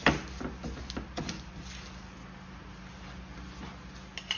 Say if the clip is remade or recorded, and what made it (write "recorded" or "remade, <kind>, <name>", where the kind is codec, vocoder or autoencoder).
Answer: recorded